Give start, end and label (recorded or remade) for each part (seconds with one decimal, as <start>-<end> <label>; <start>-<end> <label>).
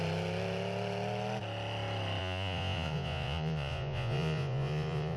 0.0-2.2 recorded; 2.2-5.2 remade